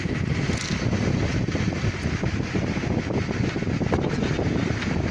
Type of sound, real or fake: real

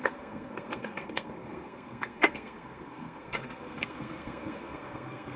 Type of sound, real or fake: fake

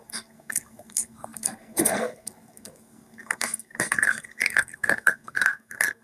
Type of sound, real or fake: fake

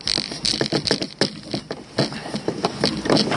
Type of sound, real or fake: real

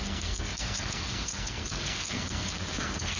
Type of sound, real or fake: fake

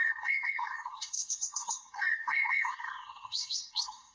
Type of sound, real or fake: fake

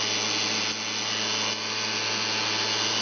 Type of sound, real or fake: real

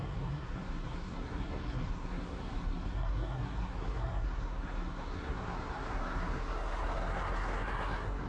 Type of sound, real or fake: fake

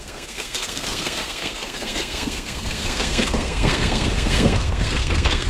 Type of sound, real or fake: fake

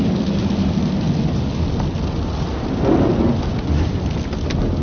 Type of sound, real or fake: real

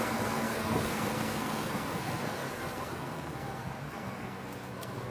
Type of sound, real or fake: fake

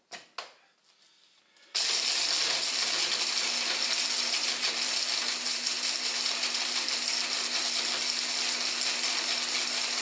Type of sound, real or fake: real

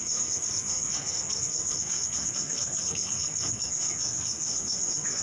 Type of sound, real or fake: fake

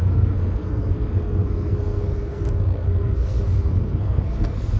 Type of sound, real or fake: fake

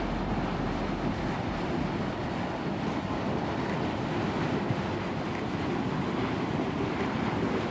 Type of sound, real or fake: real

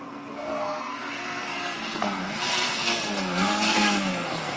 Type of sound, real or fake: fake